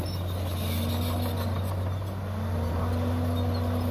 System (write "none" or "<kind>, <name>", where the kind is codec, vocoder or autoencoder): none